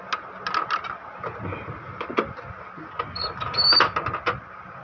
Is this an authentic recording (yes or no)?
yes